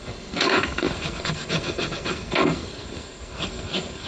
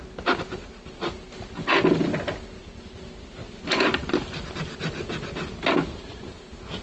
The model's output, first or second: first